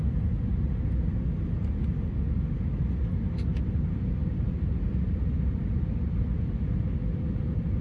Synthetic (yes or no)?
no